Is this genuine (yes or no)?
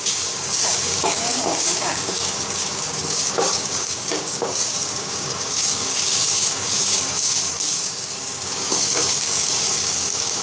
no